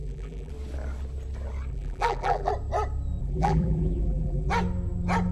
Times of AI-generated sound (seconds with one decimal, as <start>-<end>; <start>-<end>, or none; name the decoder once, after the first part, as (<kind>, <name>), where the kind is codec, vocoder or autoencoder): 0.0-0.5 (vocoder, BigVGAN v2); 1.7-2.5; 3.2-4.5